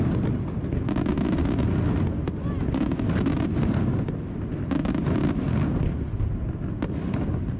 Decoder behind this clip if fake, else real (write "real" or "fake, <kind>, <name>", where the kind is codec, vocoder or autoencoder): real